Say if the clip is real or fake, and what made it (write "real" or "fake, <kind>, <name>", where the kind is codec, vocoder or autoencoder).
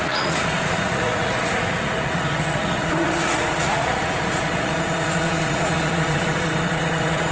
fake, vocoder, Vocos